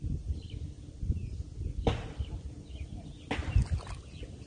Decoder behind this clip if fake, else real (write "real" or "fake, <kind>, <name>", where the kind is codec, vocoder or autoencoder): real